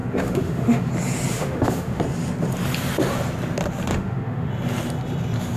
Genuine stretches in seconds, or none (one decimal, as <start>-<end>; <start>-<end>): 0.9-1.3; 2.0-3.9; 4.5-5.6